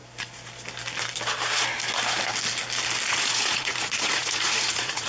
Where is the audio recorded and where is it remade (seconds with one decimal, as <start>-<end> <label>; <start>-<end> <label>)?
0.0-3.1 recorded; 3.1-5.1 remade